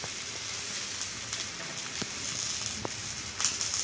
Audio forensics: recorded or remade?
recorded